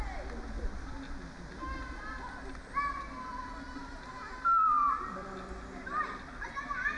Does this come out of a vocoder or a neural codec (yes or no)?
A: no